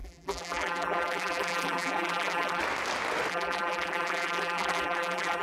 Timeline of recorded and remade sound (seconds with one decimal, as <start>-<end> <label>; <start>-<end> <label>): 0.0-2.6 remade; 2.6-3.3 recorded; 3.3-5.4 remade